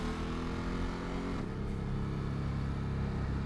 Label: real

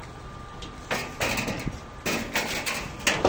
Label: real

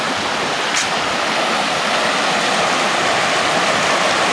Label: real